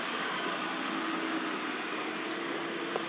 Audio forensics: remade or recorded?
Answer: recorded